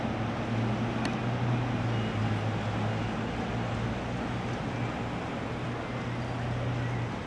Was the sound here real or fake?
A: real